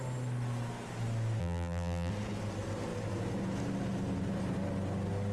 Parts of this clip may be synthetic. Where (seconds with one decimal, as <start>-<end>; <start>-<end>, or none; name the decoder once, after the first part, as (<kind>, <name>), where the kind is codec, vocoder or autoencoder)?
1.4-2.1 (vocoder, BigVGAN v2)